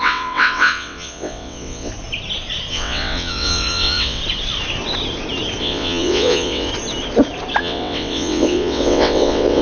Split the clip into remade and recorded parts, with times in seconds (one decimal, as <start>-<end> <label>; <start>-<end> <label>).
0.0-1.9 remade; 1.9-2.7 recorded; 2.7-4.2 remade; 4.2-5.6 recorded; 5.6-6.7 remade; 6.7-7.6 recorded; 7.6-9.6 remade